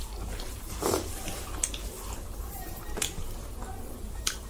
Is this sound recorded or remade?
remade